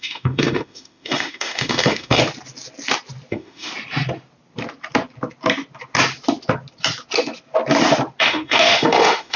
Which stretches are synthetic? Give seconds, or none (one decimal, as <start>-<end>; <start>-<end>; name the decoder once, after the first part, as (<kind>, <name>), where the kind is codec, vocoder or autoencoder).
0.0-2.2 (autoencoder, DAC-VAE); 3.3-3.7; 8.2-9.4